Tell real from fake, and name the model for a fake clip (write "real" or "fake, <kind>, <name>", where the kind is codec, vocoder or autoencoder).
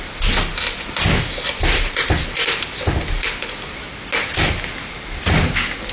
real